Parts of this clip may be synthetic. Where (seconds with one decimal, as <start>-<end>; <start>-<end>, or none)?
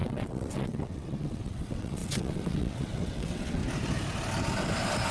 0.0-3.6